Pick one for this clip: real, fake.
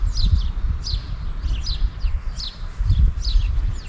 real